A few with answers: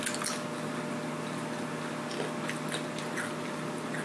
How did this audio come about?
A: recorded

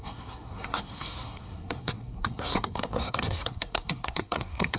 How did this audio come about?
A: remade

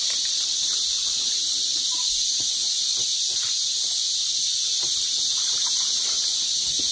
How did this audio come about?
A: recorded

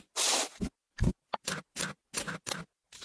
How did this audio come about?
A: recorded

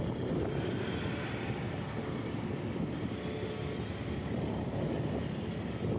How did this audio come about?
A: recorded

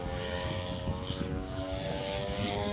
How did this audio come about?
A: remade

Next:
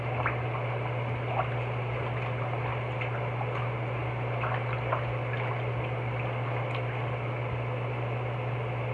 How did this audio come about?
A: recorded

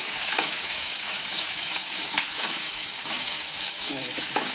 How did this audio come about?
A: remade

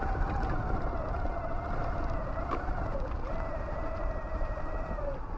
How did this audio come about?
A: recorded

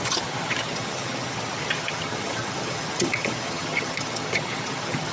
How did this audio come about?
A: remade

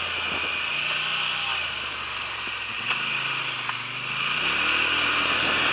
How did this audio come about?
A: recorded